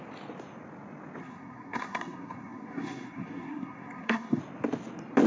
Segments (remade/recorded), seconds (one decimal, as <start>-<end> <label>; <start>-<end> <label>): 0.0-1.2 recorded; 1.2-4.4 remade; 4.4-5.3 recorded

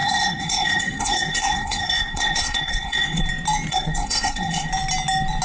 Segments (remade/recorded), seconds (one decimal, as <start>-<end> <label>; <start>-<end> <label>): 0.0-3.2 remade; 3.2-3.7 recorded; 3.7-4.7 remade; 4.7-5.4 recorded

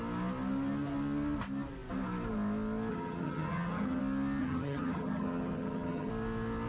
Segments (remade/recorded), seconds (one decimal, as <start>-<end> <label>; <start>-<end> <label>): 0.0-2.9 recorded; 2.9-4.0 remade; 4.0-4.4 recorded; 4.4-6.1 remade; 6.1-6.7 recorded

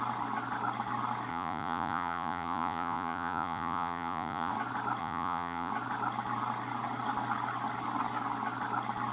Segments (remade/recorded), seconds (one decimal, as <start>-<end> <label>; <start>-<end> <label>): 0.0-1.3 recorded; 1.3-4.5 remade; 4.5-5.0 recorded; 5.0-5.7 remade; 5.7-9.1 recorded

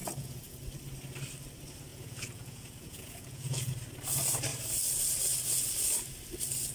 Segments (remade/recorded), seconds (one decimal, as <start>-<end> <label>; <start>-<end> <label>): 0.0-0.6 remade; 0.6-1.9 recorded; 1.9-3.7 remade; 3.7-6.7 recorded